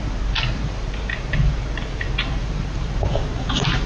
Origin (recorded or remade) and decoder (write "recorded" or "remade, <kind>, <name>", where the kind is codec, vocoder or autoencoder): remade, vocoder, BigVGAN v2